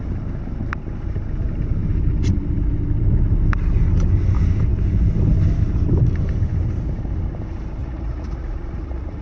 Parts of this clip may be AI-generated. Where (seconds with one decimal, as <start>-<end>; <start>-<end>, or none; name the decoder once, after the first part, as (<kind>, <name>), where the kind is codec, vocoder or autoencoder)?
7.8-9.2 (vocoder, Vocos)